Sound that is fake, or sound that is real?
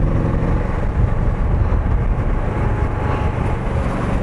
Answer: real